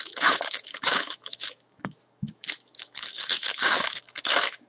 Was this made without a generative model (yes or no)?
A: no